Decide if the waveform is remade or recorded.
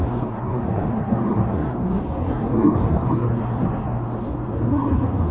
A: remade